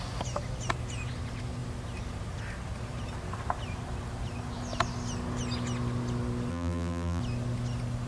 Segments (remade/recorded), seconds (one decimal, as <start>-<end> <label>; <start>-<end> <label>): 0.0-6.5 recorded; 6.5-7.2 remade; 7.2-8.1 recorded